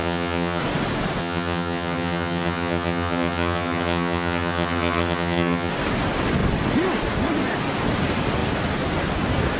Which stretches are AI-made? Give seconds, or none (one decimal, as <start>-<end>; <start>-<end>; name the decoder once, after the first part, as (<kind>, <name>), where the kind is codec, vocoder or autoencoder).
0.0-0.6 (vocoder, HiFi-GAN); 1.2-5.7

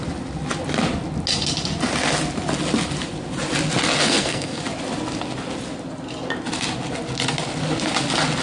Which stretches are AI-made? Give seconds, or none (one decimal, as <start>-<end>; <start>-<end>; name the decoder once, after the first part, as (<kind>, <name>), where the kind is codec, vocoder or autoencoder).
4.0-4.6 (codec, SNAC)